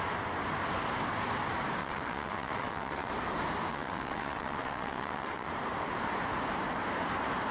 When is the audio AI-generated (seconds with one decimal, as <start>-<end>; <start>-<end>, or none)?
1.8-3.1; 3.7-5.5